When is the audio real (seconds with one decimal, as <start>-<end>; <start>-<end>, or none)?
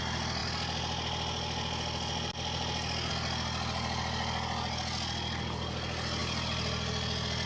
0.0-7.5